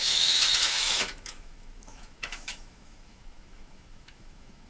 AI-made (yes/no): yes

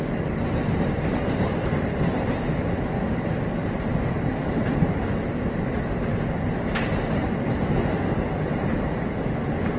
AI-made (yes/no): no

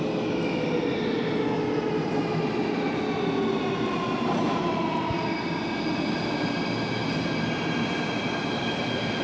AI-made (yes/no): no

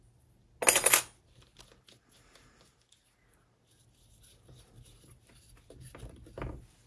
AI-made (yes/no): no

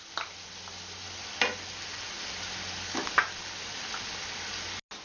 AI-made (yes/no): no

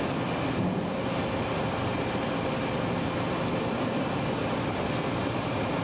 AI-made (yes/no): no